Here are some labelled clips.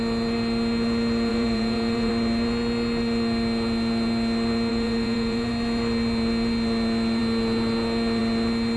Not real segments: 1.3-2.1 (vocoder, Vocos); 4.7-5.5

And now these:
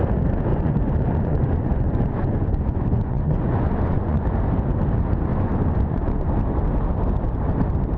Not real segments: 0.5-4.4 (vocoder, Vocos); 5.3-6.2